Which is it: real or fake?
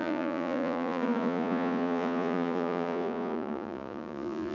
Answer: fake